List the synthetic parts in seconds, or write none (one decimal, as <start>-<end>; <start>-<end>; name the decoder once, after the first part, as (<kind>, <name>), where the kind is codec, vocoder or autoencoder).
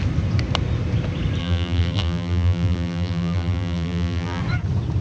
1.4-4.4 (vocoder, BigVGAN v2)